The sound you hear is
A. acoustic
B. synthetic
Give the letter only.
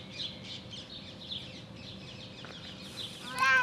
A